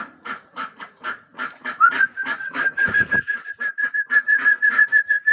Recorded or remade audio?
remade